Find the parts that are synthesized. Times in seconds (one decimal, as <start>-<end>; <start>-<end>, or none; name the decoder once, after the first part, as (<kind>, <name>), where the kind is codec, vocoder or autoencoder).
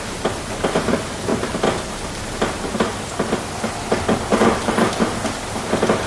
1.3-3.3 (vocoder, BigVGAN v2); 4.3-4.9